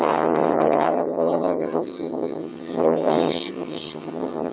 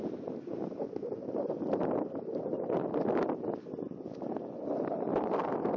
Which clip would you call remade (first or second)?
first